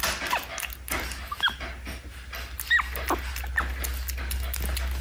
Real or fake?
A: real